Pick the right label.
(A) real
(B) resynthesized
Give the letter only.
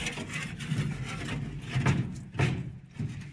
A